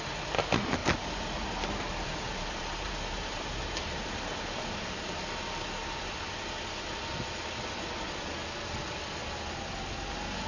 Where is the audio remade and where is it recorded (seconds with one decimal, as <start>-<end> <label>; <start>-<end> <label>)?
0.0-0.8 recorded; 0.8-4.9 remade; 4.9-10.5 recorded